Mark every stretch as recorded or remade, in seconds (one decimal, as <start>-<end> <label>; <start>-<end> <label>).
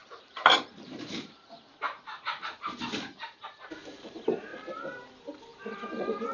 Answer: 0.0-3.8 remade; 3.8-5.5 recorded; 5.5-6.3 remade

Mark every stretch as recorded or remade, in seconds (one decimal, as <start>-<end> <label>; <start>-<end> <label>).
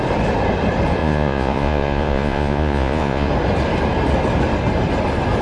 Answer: 0.0-1.0 recorded; 1.0-3.3 remade; 3.3-5.4 recorded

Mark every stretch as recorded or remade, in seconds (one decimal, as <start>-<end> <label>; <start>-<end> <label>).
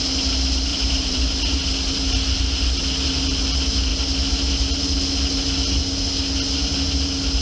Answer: 0.0-0.7 recorded; 0.7-1.3 remade; 1.3-7.4 recorded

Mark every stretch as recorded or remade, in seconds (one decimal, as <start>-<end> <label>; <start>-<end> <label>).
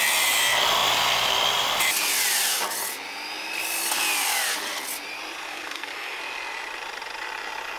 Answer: 0.0-5.5 recorded; 5.5-6.2 remade; 6.2-7.8 recorded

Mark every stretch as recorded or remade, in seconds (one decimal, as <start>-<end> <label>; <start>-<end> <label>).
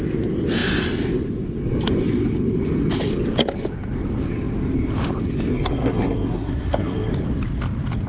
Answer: 0.0-5.5 recorded; 5.5-7.1 remade; 7.1-8.1 recorded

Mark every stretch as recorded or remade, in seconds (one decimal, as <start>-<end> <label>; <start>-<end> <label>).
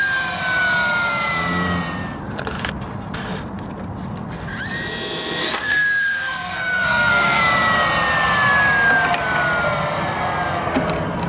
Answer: 0.0-5.4 recorded; 5.4-7.4 remade; 7.4-11.3 recorded